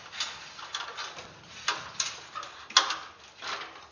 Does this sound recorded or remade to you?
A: recorded